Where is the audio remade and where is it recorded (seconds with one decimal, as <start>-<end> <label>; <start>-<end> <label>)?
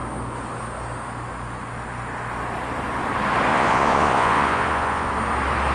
0.0-3.5 recorded; 3.5-5.1 remade; 5.1-5.7 recorded